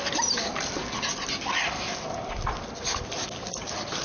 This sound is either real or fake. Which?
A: real